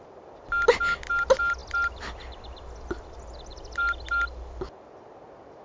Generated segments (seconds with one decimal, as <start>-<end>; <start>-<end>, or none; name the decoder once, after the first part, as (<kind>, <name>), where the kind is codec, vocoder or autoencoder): none